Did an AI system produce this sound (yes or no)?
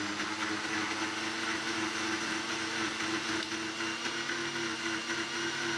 no